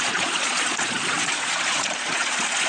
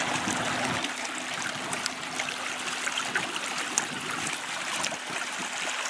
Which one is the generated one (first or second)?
first